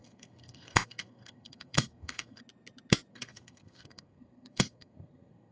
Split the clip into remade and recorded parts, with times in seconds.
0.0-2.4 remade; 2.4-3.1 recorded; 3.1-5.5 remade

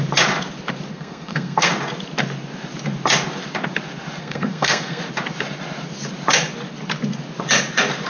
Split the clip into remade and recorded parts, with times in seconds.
0.0-0.9 recorded; 0.9-1.7 remade; 1.7-4.2 recorded; 4.2-5.0 remade; 5.0-8.1 recorded